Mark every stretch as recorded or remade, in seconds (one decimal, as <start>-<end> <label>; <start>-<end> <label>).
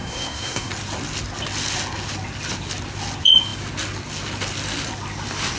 0.0-0.7 remade; 0.7-5.6 recorded